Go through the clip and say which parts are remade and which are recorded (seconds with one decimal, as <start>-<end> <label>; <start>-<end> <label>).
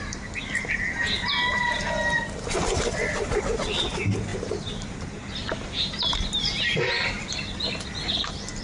0.0-4.3 recorded; 4.3-7.3 remade; 7.3-8.6 recorded